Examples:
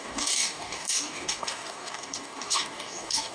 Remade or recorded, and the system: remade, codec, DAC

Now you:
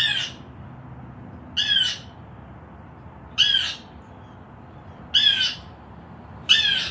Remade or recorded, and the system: recorded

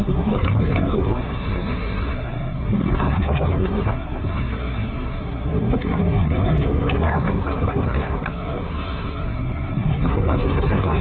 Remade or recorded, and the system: remade, codec, SNAC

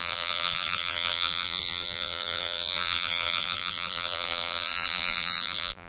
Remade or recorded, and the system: remade, vocoder, BigVGAN v2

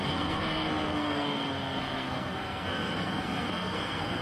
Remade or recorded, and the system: remade, codec, SNAC